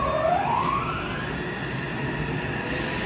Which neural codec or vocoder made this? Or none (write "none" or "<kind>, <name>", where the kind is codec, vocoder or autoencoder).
none